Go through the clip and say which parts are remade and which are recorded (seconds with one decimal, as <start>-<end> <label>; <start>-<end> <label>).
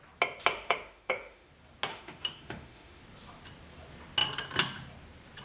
0.0-0.5 recorded; 0.5-1.5 remade; 1.5-1.9 recorded; 1.9-3.0 remade; 3.0-5.4 recorded